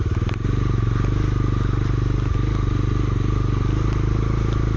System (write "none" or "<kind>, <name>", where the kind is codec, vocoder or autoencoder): none